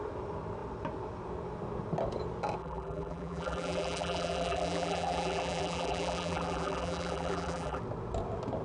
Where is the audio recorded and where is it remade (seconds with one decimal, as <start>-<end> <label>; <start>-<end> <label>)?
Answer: 0.0-2.6 recorded; 2.6-7.8 remade; 7.8-8.6 recorded